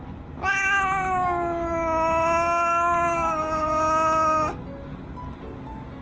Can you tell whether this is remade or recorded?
recorded